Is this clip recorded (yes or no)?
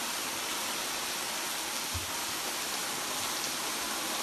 yes